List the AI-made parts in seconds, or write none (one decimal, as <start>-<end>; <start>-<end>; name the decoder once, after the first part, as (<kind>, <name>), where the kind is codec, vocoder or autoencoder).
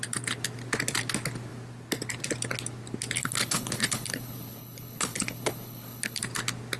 3.2-6.2 (codec, HILCodec)